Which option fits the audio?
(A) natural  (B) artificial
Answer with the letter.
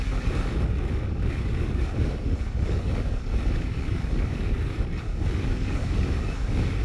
B